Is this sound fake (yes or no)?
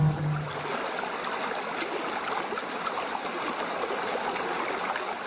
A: no